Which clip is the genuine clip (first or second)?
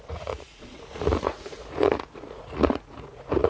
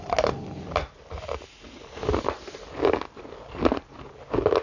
second